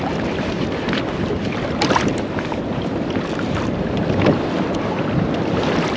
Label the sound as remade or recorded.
recorded